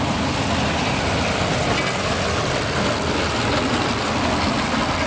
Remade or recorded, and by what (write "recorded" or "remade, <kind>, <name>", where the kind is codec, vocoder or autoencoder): recorded